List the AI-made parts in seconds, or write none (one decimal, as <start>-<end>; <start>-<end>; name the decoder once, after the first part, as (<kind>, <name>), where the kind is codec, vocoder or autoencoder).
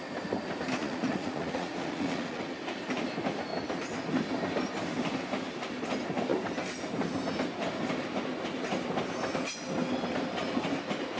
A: 0.8-2.4 (vocoder, Vocos)